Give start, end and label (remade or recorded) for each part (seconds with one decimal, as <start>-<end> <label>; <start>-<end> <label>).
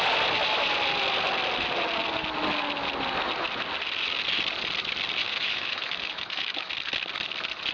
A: 0.0-5.2 recorded; 5.2-6.7 remade; 6.7-7.7 recorded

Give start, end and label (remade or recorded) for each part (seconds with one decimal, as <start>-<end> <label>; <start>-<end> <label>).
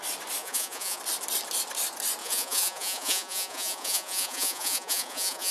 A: 0.0-0.4 recorded; 0.4-1.0 remade; 1.0-2.2 recorded; 2.2-5.5 remade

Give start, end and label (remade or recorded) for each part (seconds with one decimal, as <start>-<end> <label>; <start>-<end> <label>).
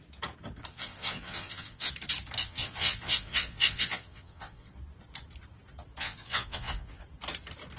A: 0.0-0.7 recorded; 0.7-1.9 remade; 1.9-2.4 recorded; 2.4-4.7 remade; 4.7-6.0 recorded; 6.0-7.0 remade; 7.0-7.8 recorded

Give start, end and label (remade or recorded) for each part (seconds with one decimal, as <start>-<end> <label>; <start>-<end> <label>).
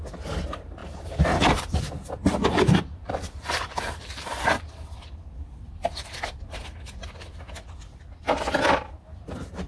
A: 0.0-0.8 recorded; 0.8-1.8 remade; 1.8-2.4 recorded; 2.4-4.7 remade; 4.7-9.7 recorded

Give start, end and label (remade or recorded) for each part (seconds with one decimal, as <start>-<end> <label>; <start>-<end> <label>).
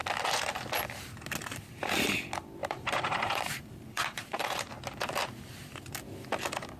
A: 0.0-2.6 recorded; 2.6-4.7 remade; 4.7-6.8 recorded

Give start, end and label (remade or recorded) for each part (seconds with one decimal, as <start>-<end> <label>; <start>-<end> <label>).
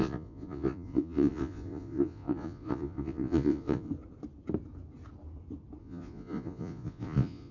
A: 0.0-3.9 remade; 3.9-5.8 recorded; 5.8-7.5 remade